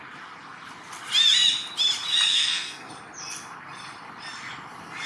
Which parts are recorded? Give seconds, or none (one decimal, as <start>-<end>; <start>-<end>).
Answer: 0.0-2.3; 2.9-5.1